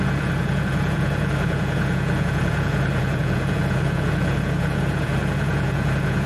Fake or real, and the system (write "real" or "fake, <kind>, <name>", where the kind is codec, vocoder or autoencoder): fake, vocoder, Vocos